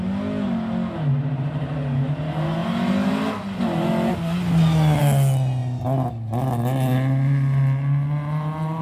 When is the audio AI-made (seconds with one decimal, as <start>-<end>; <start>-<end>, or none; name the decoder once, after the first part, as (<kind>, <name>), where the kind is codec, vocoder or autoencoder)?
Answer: none